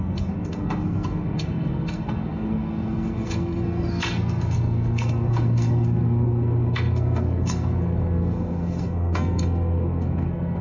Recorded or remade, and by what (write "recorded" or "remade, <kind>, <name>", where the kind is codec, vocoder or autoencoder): remade, codec, SNAC